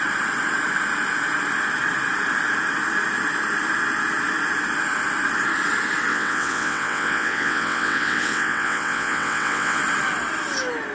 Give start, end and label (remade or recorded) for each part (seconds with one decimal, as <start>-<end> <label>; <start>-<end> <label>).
0.0-6.1 recorded; 6.1-9.8 remade; 9.8-10.9 recorded